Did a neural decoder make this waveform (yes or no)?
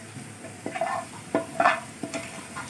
yes